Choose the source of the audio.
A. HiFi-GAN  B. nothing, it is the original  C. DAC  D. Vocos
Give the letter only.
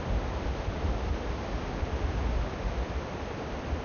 B